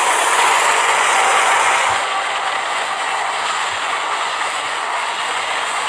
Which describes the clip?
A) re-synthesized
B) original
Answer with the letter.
A